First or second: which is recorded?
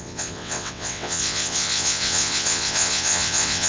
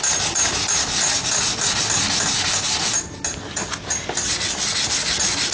second